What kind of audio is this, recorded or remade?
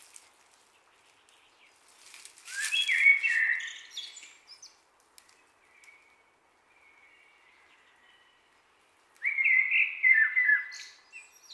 recorded